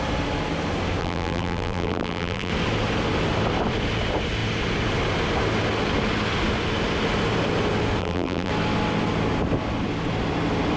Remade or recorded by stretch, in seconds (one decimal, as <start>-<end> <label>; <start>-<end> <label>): 0.0-1.0 recorded; 1.0-2.5 remade; 2.5-8.0 recorded; 8.0-8.5 remade; 8.5-10.8 recorded